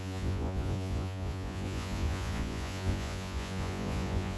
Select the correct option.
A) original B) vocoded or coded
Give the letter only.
B